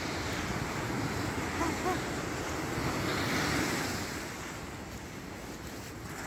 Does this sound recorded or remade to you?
recorded